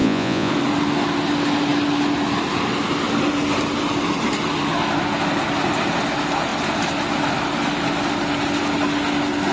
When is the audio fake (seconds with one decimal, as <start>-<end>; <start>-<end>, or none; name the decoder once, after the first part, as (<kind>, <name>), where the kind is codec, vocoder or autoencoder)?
0.0-0.5 (vocoder, Vocos)

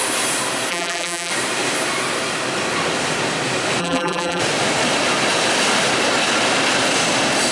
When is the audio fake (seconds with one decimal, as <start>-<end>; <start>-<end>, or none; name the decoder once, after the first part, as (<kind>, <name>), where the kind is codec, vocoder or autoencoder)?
0.7-1.3 (vocoder, BigVGAN v2); 3.8-4.4